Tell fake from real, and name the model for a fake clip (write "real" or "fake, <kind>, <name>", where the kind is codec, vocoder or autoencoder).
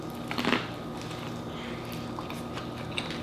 real